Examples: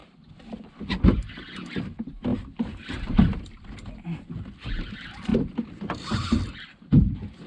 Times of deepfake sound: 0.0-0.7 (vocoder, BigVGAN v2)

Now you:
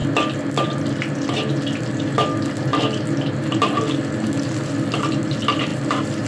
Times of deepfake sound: 2.7-4.1 (vocoder, BigVGAN v2); 5.7-6.3

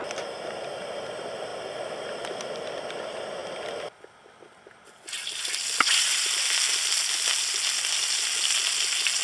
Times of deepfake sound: 1.5-2.8 (vocoder, BigVGAN v2)